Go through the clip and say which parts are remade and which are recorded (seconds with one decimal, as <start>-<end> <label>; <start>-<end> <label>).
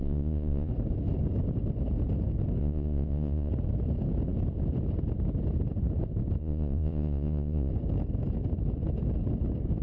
0.0-0.7 remade; 0.7-2.6 recorded; 2.6-3.5 remade; 3.5-6.4 recorded; 6.4-7.7 remade; 7.7-9.8 recorded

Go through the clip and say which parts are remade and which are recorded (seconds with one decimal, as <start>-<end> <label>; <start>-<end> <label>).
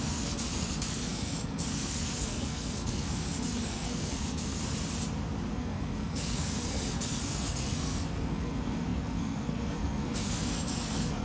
0.0-4.6 remade; 4.6-5.5 recorded; 5.5-11.2 remade